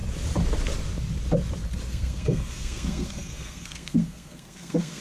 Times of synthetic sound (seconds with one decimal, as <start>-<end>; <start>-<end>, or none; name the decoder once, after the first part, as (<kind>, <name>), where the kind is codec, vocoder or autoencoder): 1.9-5.0 (codec, SNAC)